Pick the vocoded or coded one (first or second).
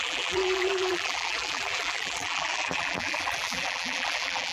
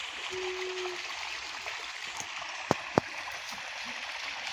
first